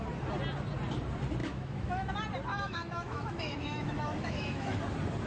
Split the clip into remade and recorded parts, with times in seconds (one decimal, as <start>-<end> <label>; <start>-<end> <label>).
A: 0.0-1.4 recorded; 1.4-2.1 remade; 2.1-2.5 recorded; 2.5-4.8 remade; 4.8-5.3 recorded